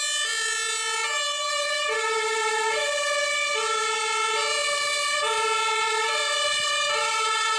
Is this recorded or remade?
recorded